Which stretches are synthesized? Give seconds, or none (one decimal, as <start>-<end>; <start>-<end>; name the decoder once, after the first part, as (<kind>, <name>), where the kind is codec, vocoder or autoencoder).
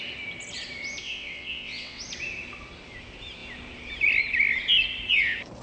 1.0-2.0 (vocoder, WaveNeXt)